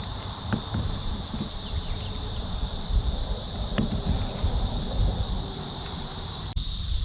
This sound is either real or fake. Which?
fake